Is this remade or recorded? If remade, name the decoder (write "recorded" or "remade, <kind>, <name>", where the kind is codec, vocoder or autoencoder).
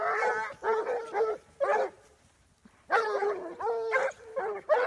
recorded